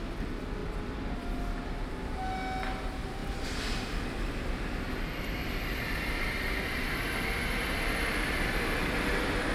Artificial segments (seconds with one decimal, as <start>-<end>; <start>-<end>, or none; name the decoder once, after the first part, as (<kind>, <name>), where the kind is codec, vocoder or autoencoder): 0.6-1.4 (vocoder, BigVGAN v2)